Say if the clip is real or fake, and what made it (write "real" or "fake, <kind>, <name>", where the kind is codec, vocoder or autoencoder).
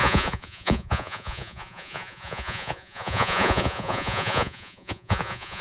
fake, vocoder, Vocos